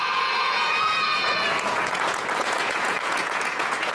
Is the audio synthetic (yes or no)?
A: yes